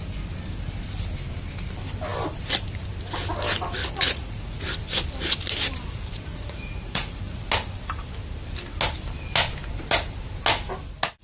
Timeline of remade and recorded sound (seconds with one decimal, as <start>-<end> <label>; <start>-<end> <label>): 0.0-3.8 recorded; 3.8-4.6 remade; 4.6-6.3 recorded; 6.3-7.4 remade; 7.4-11.2 recorded